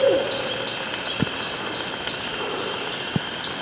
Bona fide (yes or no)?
yes